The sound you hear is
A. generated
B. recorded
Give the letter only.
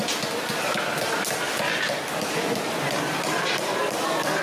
B